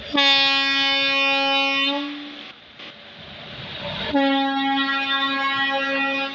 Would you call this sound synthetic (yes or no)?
no